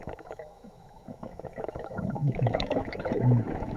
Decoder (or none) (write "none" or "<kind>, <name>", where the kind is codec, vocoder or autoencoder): autoencoder, DAC-VAE